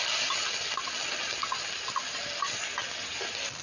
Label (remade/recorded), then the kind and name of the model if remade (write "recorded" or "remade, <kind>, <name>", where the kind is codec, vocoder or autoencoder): recorded